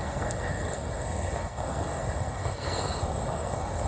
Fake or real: fake